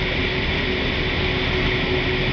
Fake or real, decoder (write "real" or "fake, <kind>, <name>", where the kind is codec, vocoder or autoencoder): real